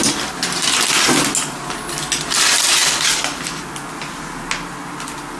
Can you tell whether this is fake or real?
real